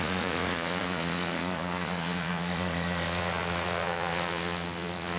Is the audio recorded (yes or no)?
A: no